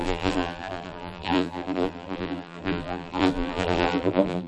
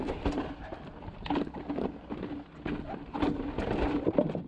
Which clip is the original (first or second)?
second